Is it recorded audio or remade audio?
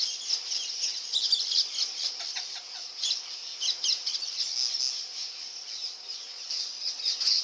recorded